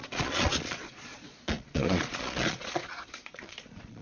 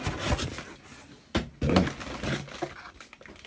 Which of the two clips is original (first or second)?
second